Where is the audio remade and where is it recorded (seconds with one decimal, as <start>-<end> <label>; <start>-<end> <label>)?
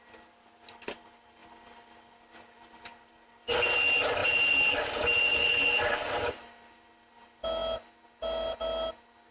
0.0-1.4 recorded; 1.4-3.7 remade; 3.7-4.2 recorded; 4.2-6.2 remade; 6.2-9.3 recorded